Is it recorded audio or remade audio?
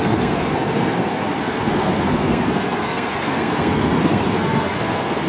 remade